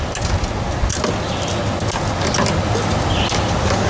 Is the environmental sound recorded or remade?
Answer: recorded